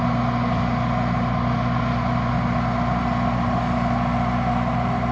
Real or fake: real